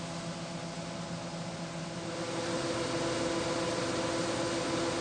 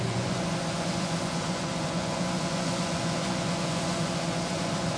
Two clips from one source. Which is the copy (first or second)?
second